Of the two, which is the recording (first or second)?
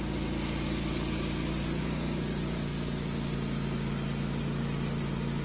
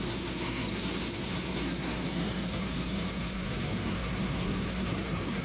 first